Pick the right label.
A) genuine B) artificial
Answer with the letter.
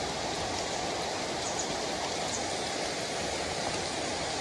A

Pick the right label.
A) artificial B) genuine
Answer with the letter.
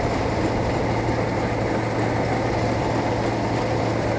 B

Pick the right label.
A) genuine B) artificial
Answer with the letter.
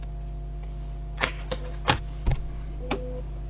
A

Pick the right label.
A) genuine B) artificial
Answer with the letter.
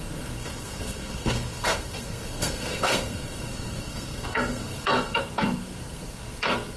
B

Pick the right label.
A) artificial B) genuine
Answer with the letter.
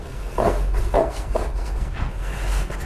A